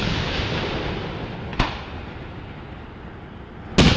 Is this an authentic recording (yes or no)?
yes